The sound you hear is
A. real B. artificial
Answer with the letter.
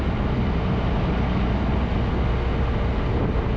A